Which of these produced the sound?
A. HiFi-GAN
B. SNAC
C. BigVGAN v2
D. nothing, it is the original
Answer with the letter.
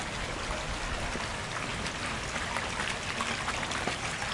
D